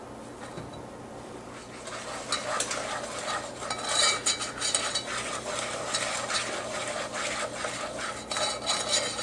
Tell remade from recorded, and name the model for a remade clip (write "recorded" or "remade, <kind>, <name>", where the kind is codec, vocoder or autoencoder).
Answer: recorded